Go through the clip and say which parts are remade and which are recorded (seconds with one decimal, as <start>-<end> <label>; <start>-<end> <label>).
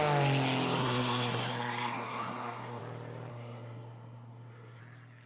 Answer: 0.0-0.8 recorded; 0.8-2.8 remade; 2.8-3.3 recorded; 3.3-4.8 remade; 4.8-5.3 recorded